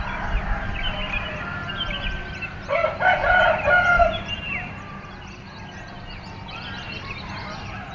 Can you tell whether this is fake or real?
real